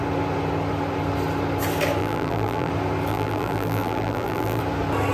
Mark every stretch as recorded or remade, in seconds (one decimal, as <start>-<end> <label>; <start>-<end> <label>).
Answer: 0.0-2.0 recorded; 2.0-2.7 remade; 2.7-3.1 recorded; 3.1-4.6 remade; 4.6-5.1 recorded